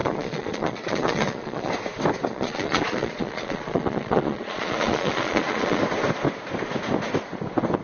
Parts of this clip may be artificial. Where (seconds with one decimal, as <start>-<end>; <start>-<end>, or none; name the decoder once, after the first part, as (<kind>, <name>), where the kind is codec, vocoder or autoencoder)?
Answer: 0.0-1.7 (vocoder, Vocos); 2.3-5.8